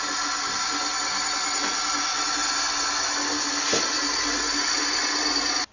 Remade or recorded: recorded